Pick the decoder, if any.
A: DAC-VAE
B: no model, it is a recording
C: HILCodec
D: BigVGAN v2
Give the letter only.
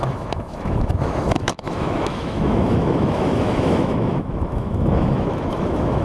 A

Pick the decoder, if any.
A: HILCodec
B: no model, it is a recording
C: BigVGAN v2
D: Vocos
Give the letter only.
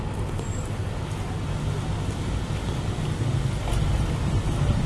B